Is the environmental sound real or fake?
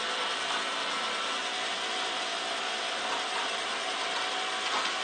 real